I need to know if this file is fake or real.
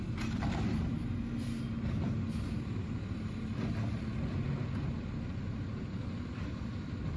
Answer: real